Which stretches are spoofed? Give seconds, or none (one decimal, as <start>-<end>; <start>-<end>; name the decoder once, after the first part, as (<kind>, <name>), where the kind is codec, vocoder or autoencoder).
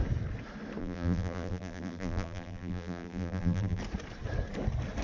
0.8-3.8 (vocoder, BigVGAN v2)